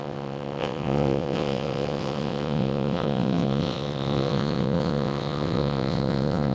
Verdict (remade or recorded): remade